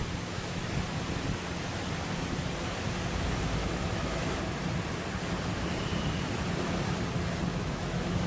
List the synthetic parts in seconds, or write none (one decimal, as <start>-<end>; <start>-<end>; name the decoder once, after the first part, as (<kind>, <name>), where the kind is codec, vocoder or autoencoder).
3.6-4.4 (autoencoder, DAC-VAE); 7.5-8.3

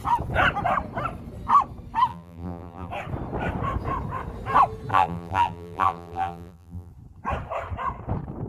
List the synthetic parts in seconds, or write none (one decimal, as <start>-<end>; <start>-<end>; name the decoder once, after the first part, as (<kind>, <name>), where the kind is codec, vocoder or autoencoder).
2.1-2.9 (vocoder, BigVGAN v2); 4.9-6.9

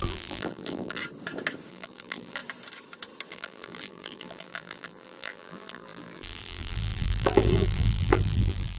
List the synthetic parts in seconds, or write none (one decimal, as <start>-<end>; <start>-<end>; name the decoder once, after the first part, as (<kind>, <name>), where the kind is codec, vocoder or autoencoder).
0.0-1.0 (vocoder, BigVGAN v2); 1.7-2.4; 3.3-8.8